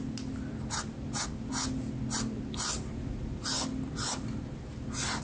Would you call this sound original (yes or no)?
yes